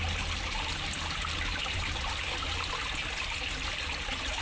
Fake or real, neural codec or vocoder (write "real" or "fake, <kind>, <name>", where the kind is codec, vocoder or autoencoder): real